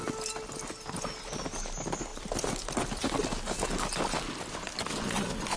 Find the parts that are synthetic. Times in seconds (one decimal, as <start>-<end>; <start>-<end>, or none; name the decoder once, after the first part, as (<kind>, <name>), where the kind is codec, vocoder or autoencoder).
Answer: none